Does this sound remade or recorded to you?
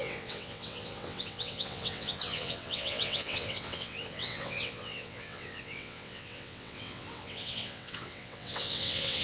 remade